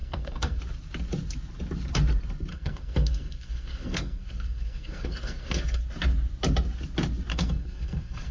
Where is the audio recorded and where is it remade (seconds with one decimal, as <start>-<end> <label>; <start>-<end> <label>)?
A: 0.0-0.6 remade; 0.6-2.5 recorded; 2.5-5.8 remade; 5.8-7.3 recorded; 7.3-8.3 remade